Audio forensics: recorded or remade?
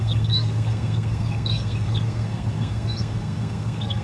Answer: remade